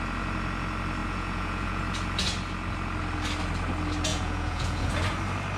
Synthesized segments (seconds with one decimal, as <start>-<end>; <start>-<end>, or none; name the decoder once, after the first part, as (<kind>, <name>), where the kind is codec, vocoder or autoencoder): 1.0-1.8 (vocoder, Vocos); 4.1-4.9

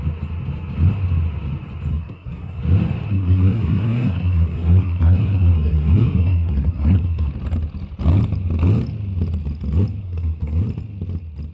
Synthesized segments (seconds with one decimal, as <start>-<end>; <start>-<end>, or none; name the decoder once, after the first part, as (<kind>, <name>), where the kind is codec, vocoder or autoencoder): 1.9-2.6 (codec, SNAC); 3.1-7.3; 10.0-10.6